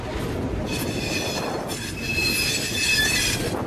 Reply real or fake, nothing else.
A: real